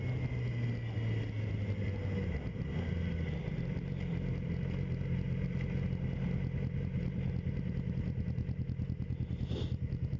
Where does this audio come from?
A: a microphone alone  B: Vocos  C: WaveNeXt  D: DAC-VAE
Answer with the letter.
A